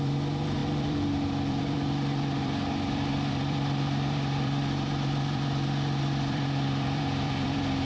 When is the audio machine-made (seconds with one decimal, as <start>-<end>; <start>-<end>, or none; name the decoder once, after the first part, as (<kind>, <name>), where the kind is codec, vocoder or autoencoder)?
0.0-7.8 (vocoder, BigVGAN v2)

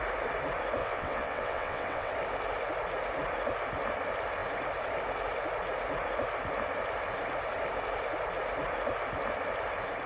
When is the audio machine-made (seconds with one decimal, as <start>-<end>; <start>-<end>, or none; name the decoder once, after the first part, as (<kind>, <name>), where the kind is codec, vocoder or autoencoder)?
0.8-2.1 (vocoder, WaveNeXt)

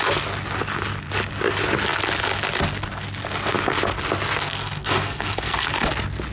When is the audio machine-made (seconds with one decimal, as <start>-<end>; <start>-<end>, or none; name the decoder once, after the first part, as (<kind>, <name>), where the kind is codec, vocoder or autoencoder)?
4.4-5.7 (codec, SNAC)